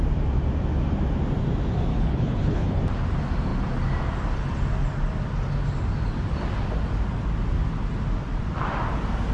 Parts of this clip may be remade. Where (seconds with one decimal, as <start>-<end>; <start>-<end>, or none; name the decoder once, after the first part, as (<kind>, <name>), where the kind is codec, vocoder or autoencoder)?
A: 1.9-2.8 (codec, HILCodec)